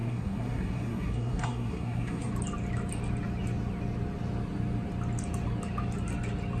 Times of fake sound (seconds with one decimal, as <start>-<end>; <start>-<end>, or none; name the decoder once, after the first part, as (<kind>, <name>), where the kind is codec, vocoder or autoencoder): 0.0-2.3 (codec, SNAC)